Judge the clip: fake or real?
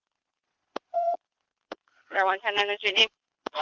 fake